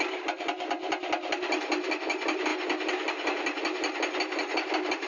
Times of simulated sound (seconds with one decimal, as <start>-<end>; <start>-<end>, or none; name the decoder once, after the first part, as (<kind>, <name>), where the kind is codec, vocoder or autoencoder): 0.0-2.5 (vocoder, BigVGAN v2)